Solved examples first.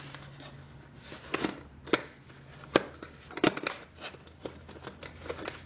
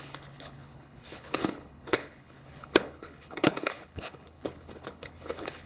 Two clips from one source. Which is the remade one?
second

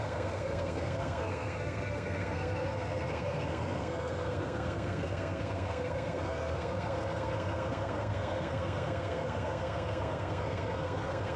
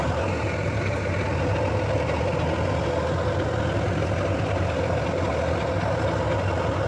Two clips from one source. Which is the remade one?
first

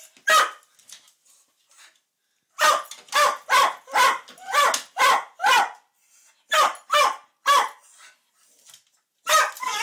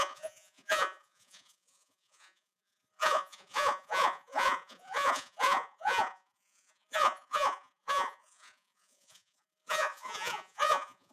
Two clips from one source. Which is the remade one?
second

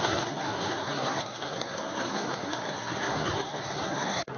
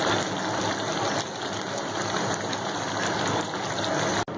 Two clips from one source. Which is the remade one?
first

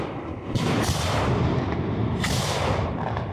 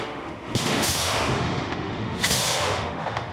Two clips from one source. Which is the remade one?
second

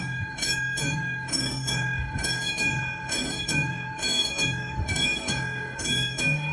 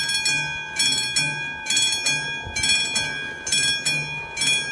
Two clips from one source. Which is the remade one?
first